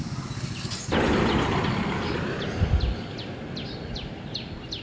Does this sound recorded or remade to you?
recorded